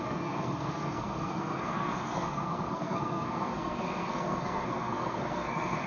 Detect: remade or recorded remade